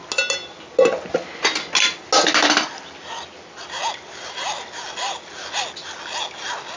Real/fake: real